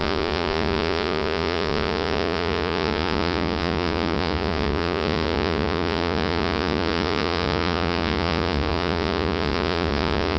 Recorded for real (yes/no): no